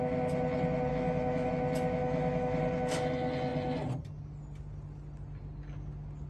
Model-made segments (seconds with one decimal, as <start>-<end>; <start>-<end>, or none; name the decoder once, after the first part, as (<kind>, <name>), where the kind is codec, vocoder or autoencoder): 0.9-1.5 (autoencoder, DAC-VAE); 2.0-2.6